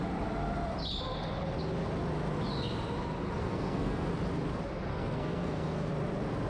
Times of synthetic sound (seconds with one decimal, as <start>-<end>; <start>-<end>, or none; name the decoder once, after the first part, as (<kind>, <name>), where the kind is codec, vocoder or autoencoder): 3.4-4.1 (codec, SNAC); 4.9-5.9